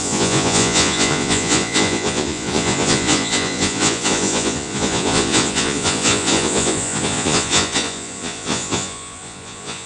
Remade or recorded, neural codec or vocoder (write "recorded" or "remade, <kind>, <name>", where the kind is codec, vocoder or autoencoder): remade, vocoder, Vocos